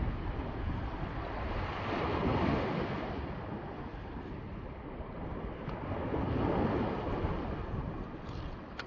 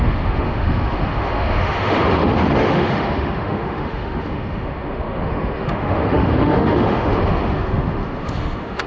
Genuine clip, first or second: first